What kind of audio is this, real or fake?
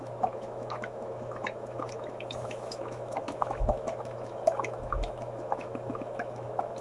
fake